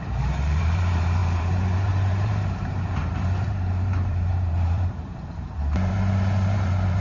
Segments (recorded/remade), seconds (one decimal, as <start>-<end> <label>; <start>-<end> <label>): 0.0-7.0 remade